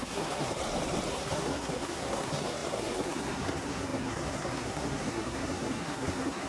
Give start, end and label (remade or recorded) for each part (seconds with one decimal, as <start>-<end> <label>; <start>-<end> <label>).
0.0-0.6 remade; 0.6-1.1 recorded; 1.1-6.5 remade